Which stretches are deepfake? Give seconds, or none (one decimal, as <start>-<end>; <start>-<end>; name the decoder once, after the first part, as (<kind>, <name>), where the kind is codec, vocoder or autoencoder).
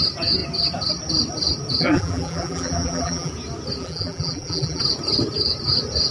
1.8-3.3 (vocoder, BigVGAN v2); 3.8-4.8